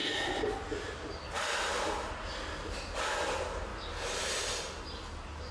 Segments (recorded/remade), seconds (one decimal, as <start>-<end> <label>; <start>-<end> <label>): 0.0-5.5 recorded